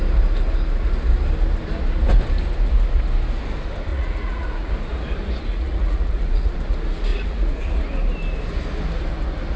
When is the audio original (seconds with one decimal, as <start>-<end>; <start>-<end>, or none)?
0.0-3.9; 4.7-5.5; 6.6-7.1; 7.8-9.6